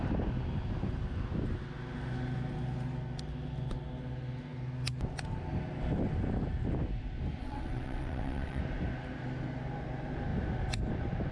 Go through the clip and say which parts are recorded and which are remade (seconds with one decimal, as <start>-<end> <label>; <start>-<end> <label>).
0.0-7.4 recorded; 7.4-8.6 remade; 8.6-11.3 recorded